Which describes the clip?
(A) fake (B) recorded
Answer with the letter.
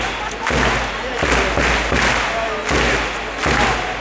B